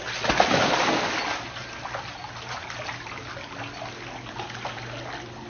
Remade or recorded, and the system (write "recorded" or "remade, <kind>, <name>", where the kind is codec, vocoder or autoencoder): recorded